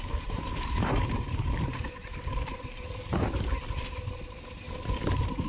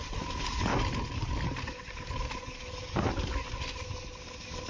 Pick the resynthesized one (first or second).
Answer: first